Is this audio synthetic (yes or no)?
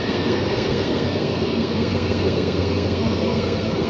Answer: yes